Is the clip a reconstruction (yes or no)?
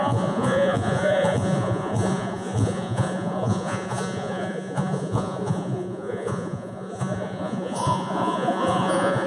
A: yes